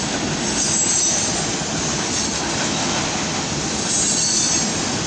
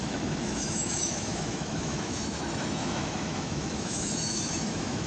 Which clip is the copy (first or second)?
second